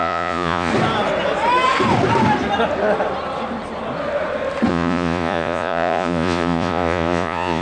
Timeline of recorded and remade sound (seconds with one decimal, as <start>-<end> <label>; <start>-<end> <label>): 0.0-0.7 remade; 0.7-4.7 recorded; 4.7-7.6 remade